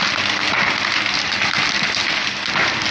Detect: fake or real real